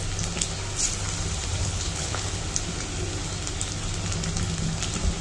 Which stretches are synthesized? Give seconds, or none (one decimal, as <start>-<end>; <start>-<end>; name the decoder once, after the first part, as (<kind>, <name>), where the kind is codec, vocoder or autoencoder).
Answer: 1.6-2.4 (codec, HILCodec)